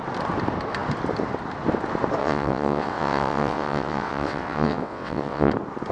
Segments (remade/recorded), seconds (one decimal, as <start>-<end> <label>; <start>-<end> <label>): 0.0-2.2 recorded; 2.2-5.5 remade; 5.5-5.9 recorded